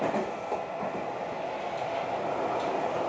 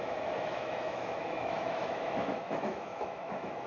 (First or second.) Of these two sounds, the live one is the first